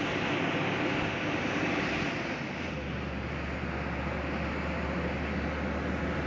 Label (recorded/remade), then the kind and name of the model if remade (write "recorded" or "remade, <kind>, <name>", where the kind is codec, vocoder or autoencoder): recorded